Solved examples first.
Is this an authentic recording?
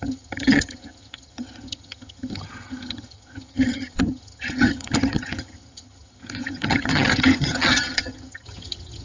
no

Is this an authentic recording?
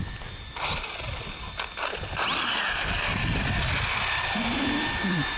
yes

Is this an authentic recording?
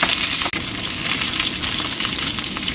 yes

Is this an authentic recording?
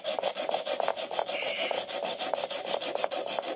yes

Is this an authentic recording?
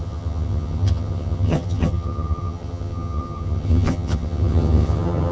no